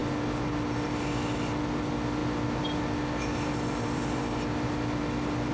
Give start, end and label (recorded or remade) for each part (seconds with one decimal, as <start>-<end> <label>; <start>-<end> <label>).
0.0-5.5 recorded